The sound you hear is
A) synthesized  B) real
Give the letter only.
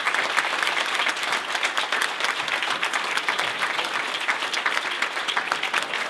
B